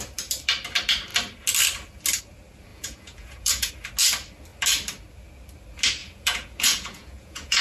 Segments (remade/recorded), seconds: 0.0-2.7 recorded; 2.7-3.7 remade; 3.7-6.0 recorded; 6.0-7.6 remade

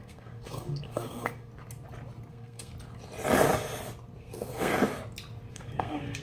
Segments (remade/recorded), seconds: 0.0-1.5 remade; 1.5-2.3 recorded; 2.3-2.7 remade; 2.7-4.2 recorded; 4.2-4.7 remade; 4.7-5.5 recorded; 5.5-6.2 remade

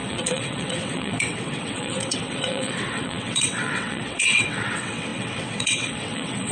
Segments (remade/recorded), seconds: 0.0-6.5 remade

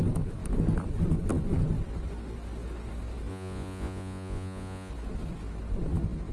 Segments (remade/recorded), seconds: 0.0-3.3 recorded; 3.3-4.9 remade; 4.9-6.3 recorded